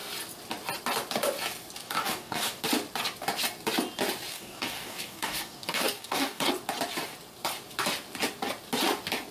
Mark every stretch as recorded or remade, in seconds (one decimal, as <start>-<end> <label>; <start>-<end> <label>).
0.0-1.8 recorded; 1.8-2.6 remade; 2.6-4.3 recorded; 4.3-6.5 remade; 6.5-9.3 recorded